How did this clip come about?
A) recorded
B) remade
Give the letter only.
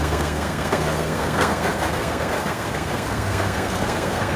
B